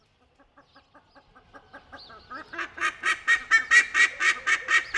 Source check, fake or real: real